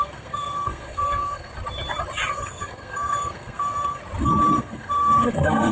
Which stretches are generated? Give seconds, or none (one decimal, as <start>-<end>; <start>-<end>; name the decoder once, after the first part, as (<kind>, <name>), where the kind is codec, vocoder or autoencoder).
0.0-1.5 (codec, SNAC); 2.3-4.0; 4.6-5.7